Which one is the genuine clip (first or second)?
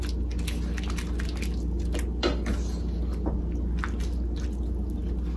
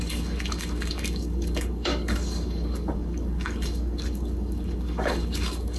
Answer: first